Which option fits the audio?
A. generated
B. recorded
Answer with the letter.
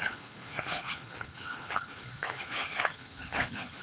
A